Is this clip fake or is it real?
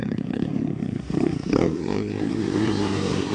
fake